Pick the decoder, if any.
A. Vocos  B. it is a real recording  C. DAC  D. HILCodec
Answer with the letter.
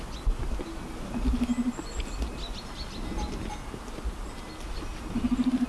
B